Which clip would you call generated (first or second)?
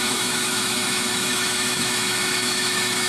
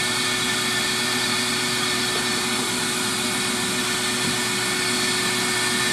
first